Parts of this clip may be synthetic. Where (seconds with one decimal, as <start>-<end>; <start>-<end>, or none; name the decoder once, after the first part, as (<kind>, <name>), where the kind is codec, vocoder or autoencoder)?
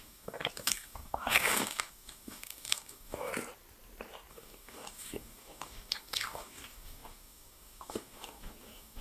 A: 0.0-3.3 (codec, DAC); 4.3-9.0